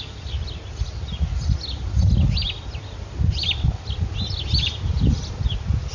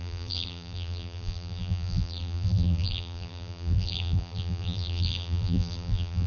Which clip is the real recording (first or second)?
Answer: first